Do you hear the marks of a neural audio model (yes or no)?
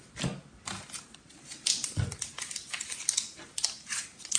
no